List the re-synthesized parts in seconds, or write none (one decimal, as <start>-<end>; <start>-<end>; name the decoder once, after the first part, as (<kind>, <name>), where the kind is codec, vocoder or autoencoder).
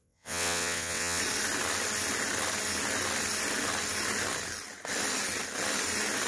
0.0-1.2 (vocoder, WaveNeXt)